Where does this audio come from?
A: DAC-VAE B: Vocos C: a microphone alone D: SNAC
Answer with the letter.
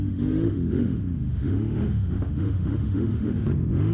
A